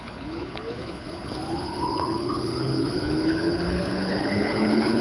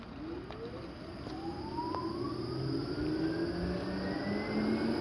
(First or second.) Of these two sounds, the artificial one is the first